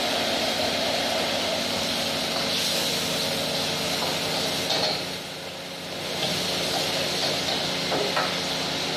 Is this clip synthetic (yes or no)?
no